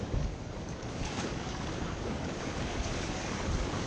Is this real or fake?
fake